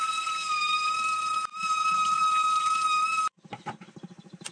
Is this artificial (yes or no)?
no